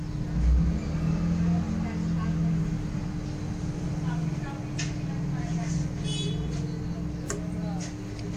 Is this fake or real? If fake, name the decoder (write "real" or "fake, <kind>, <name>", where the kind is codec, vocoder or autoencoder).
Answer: real